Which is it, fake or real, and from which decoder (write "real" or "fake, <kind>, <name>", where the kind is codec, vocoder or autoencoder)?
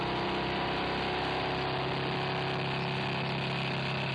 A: real